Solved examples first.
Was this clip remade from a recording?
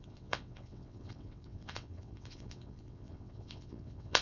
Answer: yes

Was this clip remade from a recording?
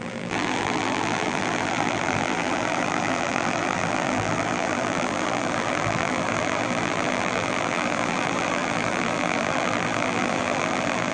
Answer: yes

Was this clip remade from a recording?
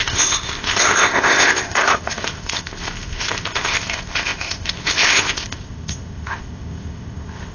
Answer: yes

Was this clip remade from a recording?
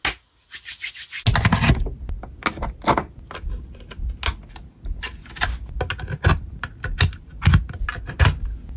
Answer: no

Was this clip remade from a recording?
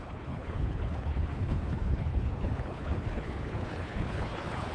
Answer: yes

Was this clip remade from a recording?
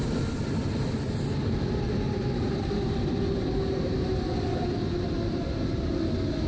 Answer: no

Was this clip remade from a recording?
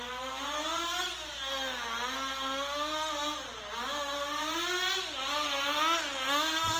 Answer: no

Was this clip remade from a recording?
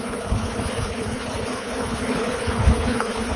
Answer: yes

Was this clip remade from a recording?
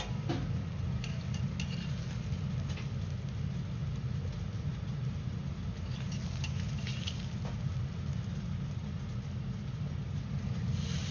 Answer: no